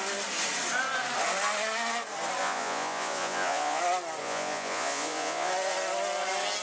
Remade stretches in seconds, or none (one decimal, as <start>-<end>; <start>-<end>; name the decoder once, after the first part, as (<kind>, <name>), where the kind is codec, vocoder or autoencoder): 2.4-3.8 (vocoder, Vocos); 4.2-5.5